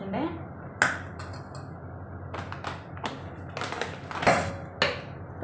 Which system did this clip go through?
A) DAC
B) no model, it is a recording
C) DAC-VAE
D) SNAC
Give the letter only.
B